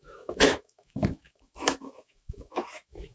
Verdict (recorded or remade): remade